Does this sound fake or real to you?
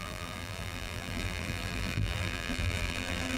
fake